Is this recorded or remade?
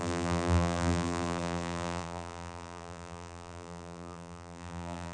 remade